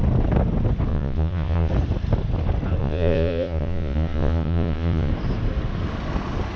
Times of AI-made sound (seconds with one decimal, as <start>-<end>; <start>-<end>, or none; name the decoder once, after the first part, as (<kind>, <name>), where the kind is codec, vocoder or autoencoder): 0.9-1.7 (vocoder, Vocos); 2.8-5.1